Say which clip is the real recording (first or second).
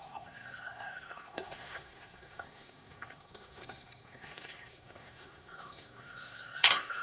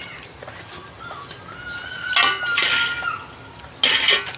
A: second